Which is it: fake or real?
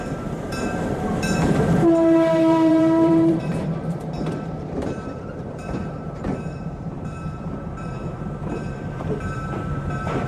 fake